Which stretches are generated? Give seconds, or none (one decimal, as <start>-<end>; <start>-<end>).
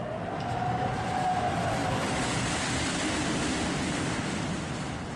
1.8-5.2